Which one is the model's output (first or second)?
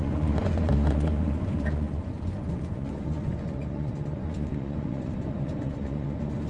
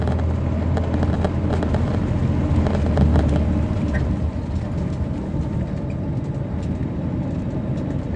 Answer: first